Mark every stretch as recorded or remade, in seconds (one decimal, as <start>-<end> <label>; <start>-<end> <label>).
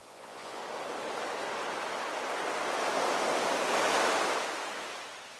0.0-0.6 remade; 0.6-5.4 recorded